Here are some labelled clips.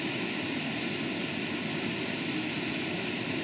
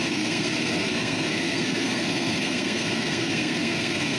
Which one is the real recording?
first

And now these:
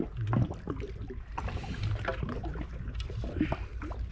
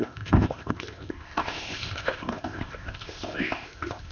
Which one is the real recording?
first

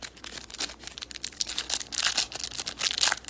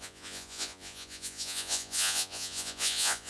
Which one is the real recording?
first